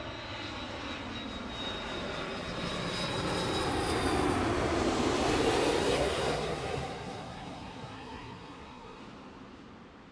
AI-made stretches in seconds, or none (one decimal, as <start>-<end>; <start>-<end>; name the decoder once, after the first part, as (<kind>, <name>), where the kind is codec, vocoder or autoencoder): 5.8-9.0 (codec, SNAC)